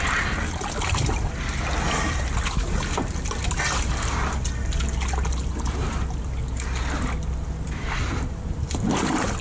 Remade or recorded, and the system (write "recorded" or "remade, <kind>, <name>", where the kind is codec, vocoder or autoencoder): recorded